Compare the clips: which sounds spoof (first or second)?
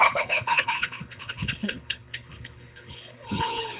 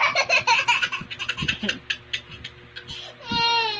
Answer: first